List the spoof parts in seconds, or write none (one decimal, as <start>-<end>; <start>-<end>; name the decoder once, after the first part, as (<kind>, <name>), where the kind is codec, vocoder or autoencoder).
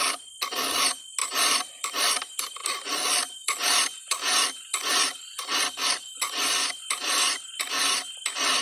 1.2-1.7 (vocoder, BigVGAN v2); 2.6-6.9